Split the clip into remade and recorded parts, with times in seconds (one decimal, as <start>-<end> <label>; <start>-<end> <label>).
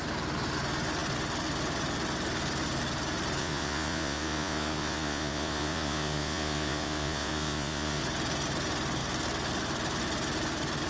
0.0-3.4 recorded; 3.4-8.0 remade; 8.0-10.9 recorded